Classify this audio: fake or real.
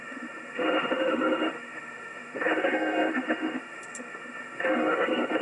fake